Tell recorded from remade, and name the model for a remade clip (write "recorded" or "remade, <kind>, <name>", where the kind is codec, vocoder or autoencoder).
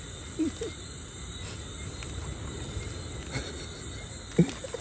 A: recorded